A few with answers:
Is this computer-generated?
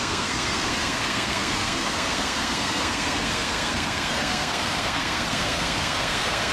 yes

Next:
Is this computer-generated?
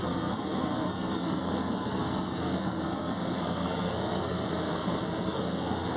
yes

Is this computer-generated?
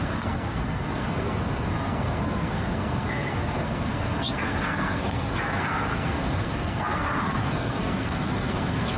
yes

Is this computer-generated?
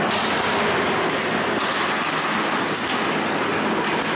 no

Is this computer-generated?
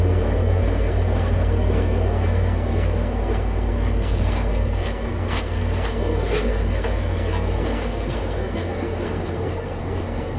yes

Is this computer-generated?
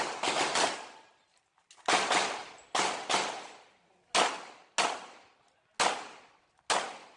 no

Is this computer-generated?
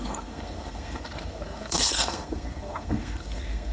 yes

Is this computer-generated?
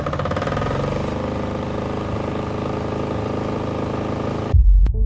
no